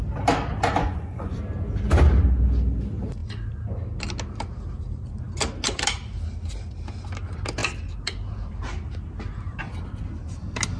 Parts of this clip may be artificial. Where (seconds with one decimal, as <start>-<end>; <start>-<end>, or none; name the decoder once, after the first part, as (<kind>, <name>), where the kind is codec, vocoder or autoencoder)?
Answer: 0.8-1.4 (vocoder, Vocos)